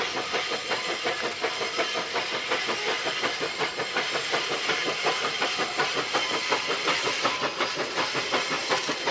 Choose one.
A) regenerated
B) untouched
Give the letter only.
B